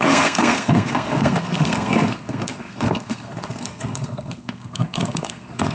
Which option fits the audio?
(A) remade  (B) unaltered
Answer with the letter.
A